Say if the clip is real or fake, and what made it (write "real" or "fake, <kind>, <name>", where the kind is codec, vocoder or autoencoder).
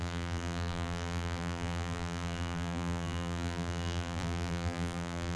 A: fake, vocoder, BigVGAN v2